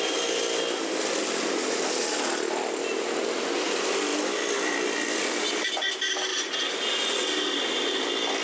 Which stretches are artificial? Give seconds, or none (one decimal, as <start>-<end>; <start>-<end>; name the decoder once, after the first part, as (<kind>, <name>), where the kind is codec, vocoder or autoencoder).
6.3-6.9 (vocoder, Vocos)